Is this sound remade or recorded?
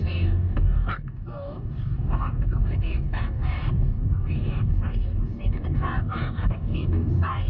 remade